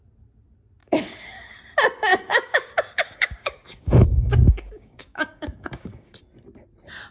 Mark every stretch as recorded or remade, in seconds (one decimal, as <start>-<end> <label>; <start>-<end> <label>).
0.0-0.8 recorded; 0.8-1.5 remade; 1.5-2.1 recorded; 2.1-6.2 remade; 6.2-7.1 recorded